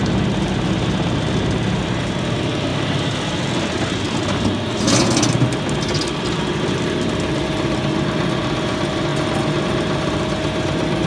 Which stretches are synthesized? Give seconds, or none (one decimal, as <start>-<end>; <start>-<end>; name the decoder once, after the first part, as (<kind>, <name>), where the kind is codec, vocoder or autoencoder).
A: none